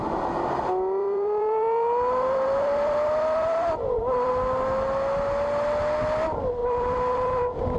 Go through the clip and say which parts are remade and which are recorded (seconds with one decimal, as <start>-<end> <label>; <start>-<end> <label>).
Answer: 0.0-1.0 recorded; 1.0-4.3 remade; 4.3-6.6 recorded; 6.6-7.8 remade